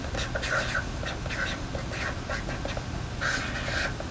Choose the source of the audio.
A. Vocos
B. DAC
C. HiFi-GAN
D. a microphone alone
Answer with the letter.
D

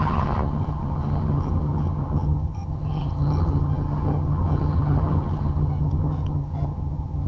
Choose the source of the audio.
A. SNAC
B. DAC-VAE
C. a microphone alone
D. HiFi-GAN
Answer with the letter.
D